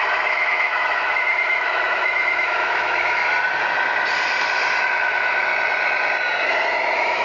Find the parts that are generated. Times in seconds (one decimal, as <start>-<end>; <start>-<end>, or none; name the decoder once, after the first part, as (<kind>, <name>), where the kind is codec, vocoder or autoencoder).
0.0-3.2 (autoencoder, DAC-VAE); 4.8-5.5; 6.7-7.2